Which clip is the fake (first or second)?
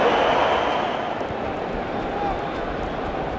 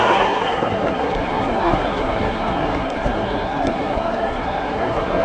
second